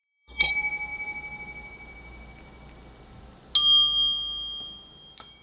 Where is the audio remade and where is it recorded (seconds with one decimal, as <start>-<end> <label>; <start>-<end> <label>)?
0.0-0.5 remade; 0.5-5.4 recorded